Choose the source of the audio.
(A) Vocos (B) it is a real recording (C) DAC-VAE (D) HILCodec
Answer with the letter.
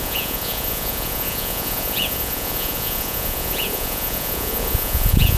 A